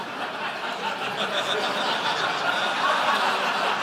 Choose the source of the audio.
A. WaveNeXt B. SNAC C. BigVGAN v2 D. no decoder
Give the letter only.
C